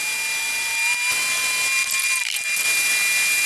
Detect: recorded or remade recorded